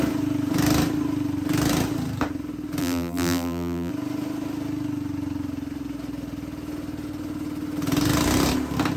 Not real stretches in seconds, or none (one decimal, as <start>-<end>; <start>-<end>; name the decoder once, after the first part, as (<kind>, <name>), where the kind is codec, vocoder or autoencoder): 2.8-3.9 (vocoder, BigVGAN v2)